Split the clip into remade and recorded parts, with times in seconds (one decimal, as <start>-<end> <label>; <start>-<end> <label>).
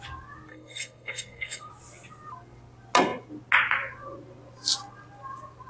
0.0-0.5 recorded; 0.5-1.7 remade; 1.7-5.7 recorded